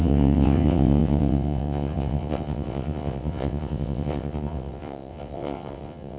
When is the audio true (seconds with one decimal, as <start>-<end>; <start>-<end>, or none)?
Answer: none